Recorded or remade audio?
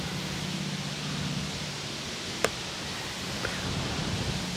recorded